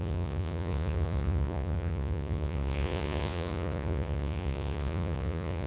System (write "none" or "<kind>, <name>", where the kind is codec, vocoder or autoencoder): vocoder, Vocos